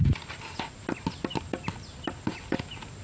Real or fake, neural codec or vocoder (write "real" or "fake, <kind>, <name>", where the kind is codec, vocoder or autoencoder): real